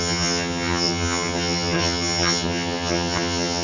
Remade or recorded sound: remade